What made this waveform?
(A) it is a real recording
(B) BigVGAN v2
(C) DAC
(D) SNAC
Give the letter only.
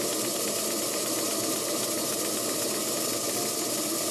A